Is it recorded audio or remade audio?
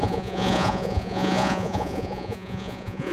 remade